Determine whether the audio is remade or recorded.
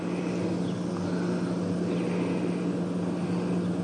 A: recorded